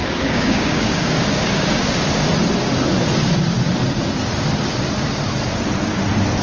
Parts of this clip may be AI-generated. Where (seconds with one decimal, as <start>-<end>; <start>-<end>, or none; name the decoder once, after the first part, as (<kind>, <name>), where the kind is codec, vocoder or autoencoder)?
0.0-2.3 (codec, DAC)